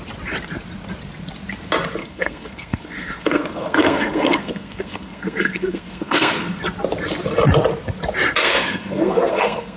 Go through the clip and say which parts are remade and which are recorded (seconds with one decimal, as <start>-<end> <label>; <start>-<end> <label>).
0.0-2.0 recorded; 2.0-6.6 remade; 6.6-8.4 recorded; 8.4-9.8 remade